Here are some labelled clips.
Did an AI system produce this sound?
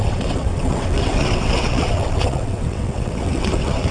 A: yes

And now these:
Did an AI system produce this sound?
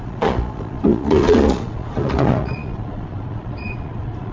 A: yes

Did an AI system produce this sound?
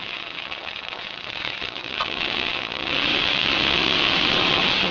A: yes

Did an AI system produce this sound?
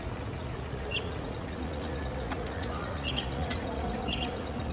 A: yes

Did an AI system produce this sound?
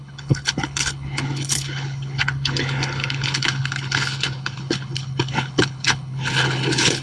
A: yes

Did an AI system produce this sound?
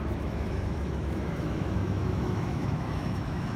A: yes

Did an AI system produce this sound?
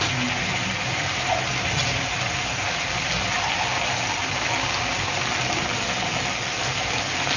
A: no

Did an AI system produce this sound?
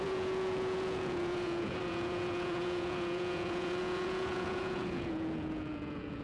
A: yes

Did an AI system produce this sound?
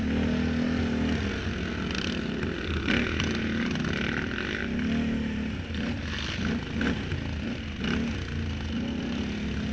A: no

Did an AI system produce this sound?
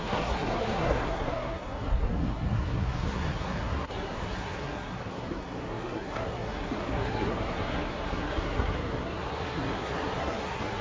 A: yes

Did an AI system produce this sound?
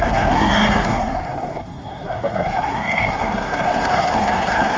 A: yes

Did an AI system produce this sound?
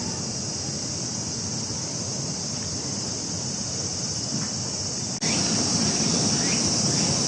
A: no